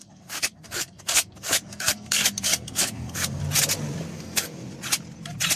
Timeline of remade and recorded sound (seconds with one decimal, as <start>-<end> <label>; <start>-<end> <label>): 0.0-3.4 remade; 3.4-4.1 recorded; 4.1-4.7 remade; 4.7-5.6 recorded